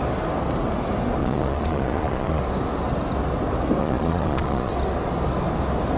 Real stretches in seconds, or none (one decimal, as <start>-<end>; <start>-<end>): 0.0-1.2; 2.4-3.8; 4.7-6.0